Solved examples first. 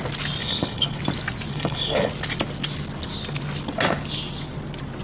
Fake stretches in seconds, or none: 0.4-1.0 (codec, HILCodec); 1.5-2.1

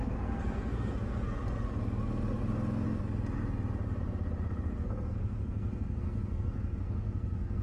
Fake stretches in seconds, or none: 0.0-1.4 (codec, SNAC); 4.8-7.6

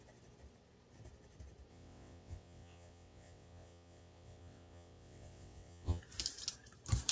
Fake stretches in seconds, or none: 1.7-6.0 (vocoder, WaveNeXt)